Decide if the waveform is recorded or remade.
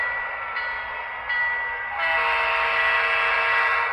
recorded